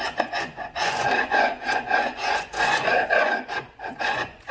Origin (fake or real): fake